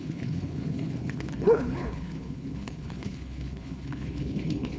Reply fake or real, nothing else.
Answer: fake